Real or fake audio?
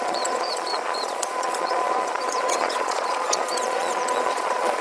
fake